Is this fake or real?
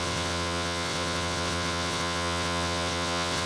fake